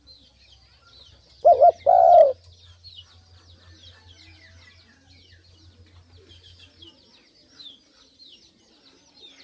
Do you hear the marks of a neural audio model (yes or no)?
no